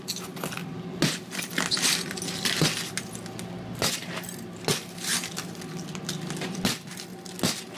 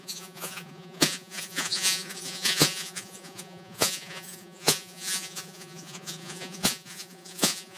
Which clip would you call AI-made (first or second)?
second